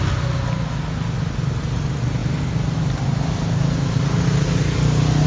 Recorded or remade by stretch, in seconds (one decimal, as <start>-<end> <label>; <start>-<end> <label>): 0.0-5.3 recorded